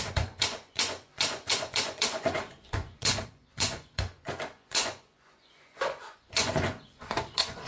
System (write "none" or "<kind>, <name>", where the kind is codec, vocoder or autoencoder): vocoder, Vocos